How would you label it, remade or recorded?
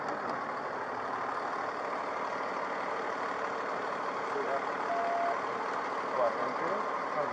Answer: recorded